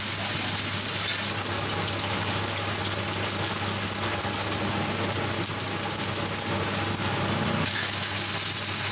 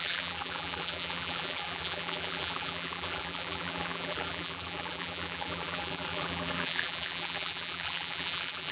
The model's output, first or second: second